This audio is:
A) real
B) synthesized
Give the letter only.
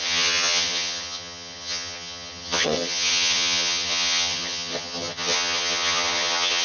B